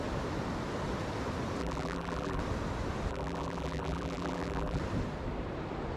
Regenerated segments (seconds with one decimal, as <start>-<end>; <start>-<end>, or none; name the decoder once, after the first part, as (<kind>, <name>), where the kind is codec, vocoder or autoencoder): 1.6-2.4 (vocoder, BigVGAN v2); 3.1-4.8